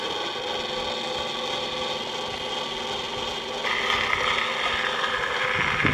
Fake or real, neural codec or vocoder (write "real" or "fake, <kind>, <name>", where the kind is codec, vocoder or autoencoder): real